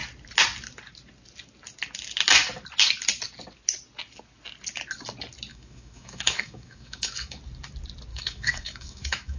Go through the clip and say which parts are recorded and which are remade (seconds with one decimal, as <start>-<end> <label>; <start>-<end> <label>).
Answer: 0.0-5.5 recorded; 5.5-7.4 remade; 7.4-8.1 recorded; 8.1-9.4 remade